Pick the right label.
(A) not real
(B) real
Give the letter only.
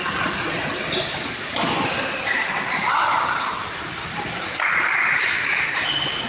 B